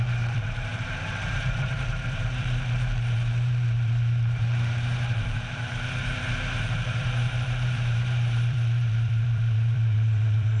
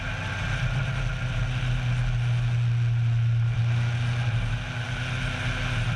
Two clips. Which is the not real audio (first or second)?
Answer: first